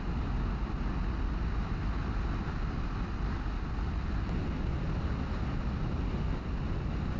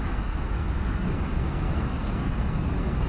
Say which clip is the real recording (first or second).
first